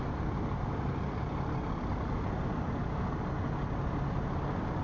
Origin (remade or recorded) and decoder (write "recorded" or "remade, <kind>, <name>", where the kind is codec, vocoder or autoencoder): recorded